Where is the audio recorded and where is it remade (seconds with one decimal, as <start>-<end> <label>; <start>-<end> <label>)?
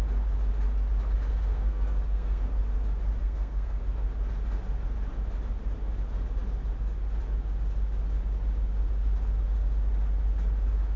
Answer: 0.0-1.3 recorded; 1.3-2.4 remade; 2.4-3.2 recorded; 3.2-3.8 remade; 3.8-11.0 recorded